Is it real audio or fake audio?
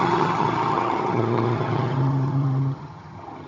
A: fake